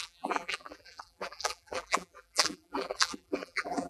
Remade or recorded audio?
remade